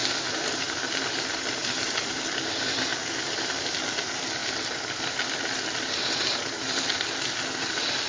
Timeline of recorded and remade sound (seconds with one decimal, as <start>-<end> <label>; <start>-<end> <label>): 0.0-0.8 remade; 0.8-1.6 recorded; 1.6-2.1 remade; 2.1-2.9 recorded; 2.9-3.7 remade; 3.7-4.4 recorded; 4.4-5.9 remade; 5.9-8.1 recorded